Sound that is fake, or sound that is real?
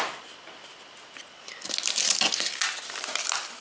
real